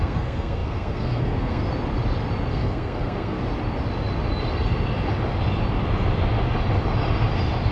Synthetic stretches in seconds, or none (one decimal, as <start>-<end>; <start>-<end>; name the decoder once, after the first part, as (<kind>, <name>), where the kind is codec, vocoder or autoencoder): 0.0-1.6 (codec, SNAC); 2.5-3.4